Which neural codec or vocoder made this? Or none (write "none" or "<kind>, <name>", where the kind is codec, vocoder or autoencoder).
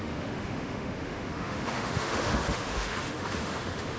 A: autoencoder, DAC-VAE